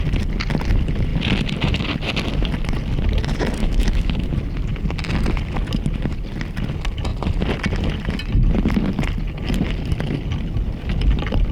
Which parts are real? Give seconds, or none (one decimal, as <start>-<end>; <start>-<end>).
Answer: 0.0-3.6; 4.3-11.5